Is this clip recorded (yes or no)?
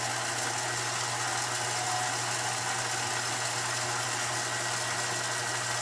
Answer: yes